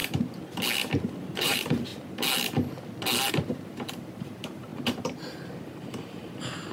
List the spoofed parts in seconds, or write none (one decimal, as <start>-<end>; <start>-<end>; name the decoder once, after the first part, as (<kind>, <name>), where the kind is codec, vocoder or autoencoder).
1.2-1.9 (vocoder, BigVGAN v2); 3.3-4.7; 6.1-6.7